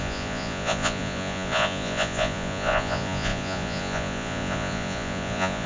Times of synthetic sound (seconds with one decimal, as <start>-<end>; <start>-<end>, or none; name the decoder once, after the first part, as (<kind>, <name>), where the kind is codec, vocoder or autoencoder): 0.0-5.7 (vocoder, Vocos)